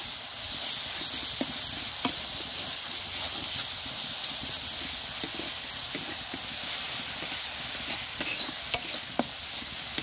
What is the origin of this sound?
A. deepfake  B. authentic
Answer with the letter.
B